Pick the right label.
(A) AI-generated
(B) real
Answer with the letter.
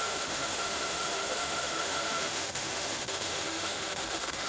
A